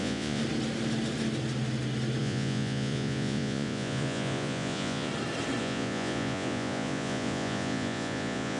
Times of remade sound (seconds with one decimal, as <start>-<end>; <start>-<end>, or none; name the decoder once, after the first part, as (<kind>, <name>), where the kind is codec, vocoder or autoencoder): 0.0-0.4 (vocoder, Vocos); 2.2-5.1; 5.6-8.6